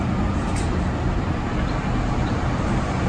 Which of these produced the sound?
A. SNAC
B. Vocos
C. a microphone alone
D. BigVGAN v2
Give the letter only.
C